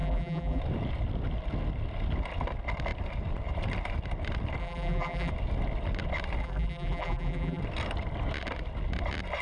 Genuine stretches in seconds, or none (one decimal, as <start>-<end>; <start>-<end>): 0.6-4.6; 5.3-6.4; 7.6-9.4